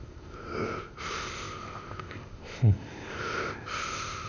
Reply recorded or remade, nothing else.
remade